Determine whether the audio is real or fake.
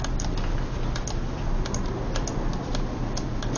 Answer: real